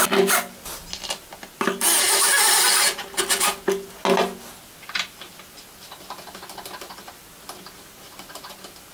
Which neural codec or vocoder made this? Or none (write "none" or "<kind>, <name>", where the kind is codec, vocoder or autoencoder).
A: none